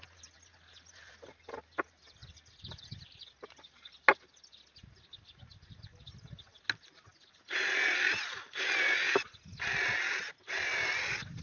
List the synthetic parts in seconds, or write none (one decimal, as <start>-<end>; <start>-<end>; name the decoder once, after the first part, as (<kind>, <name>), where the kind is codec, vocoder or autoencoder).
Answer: none

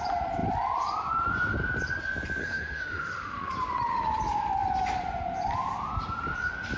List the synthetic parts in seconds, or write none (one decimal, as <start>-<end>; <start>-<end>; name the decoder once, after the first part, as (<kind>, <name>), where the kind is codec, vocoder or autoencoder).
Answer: 2.4-3.5 (autoencoder, DAC-VAE)

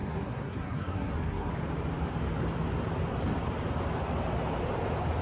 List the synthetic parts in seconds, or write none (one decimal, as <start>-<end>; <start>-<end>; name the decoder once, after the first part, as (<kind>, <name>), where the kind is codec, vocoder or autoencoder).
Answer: 0.0-1.5 (codec, SNAC)

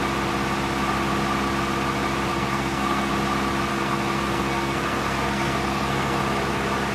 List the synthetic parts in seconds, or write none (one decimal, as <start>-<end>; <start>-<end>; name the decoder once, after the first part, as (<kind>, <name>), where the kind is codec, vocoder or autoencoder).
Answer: 2.3-3.1 (codec, SNAC); 3.7-6.2

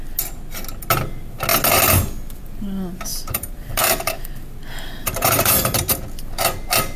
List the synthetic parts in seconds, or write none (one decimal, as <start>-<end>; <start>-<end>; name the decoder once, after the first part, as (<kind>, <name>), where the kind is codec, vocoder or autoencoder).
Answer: 3.1-4.3 (vocoder, BigVGAN v2); 5.0-6.0

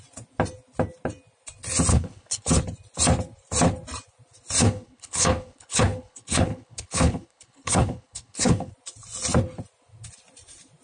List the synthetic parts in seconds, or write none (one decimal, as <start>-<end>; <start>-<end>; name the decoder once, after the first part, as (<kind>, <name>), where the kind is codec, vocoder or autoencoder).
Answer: 1.9-2.5 (codec, HILCodec); 4.6-8.7

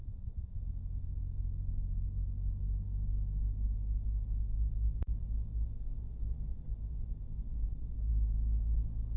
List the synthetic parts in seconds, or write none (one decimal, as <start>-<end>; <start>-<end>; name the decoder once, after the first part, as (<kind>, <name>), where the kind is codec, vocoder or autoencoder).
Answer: 0.0-0.6 (vocoder, Vocos)